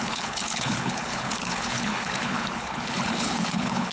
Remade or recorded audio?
remade